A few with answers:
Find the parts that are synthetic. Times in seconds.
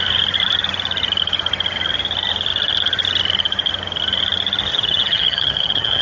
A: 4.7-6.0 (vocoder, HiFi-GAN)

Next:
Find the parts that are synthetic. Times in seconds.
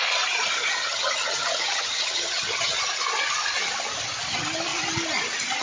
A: 0.6-2.8 (vocoder, HiFi-GAN)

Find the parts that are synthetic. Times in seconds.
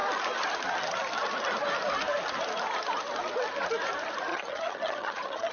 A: 4.3-5.5 (vocoder, HiFi-GAN)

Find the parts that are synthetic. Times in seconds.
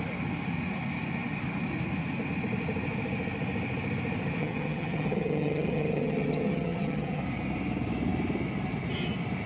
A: 4.4-7.2 (vocoder, HiFi-GAN)